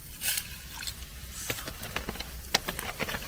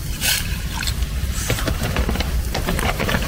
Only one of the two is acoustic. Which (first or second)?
first